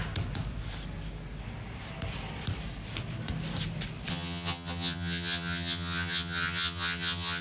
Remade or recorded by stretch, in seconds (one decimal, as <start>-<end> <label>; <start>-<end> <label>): 0.0-4.1 recorded; 4.1-7.4 remade